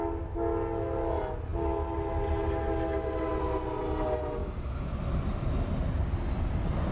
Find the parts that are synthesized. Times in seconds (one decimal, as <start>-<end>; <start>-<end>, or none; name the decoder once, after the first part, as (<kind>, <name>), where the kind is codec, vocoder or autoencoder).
none